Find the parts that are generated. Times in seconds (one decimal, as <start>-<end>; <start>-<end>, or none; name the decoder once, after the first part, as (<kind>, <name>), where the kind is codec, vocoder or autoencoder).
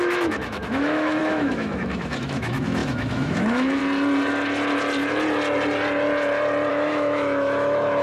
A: 0.0-3.8 (autoencoder, DAC-VAE); 6.7-8.0